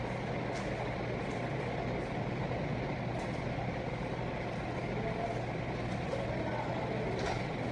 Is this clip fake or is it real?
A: real